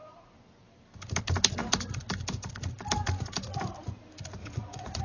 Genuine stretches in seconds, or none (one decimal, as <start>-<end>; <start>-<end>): 0.0-4.4